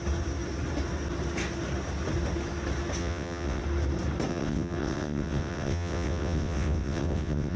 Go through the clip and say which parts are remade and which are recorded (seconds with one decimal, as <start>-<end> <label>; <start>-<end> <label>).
0.0-3.0 recorded; 3.0-3.6 remade; 3.6-4.3 recorded; 4.3-7.6 remade